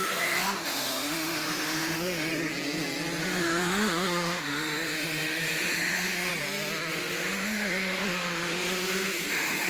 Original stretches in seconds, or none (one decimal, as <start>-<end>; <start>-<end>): 2.3-3.2; 6.3-6.9